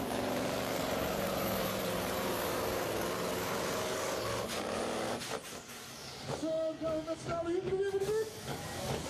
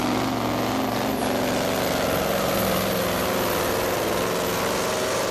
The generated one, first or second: first